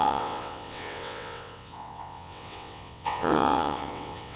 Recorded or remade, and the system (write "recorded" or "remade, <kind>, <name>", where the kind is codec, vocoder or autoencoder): remade, vocoder, WaveNeXt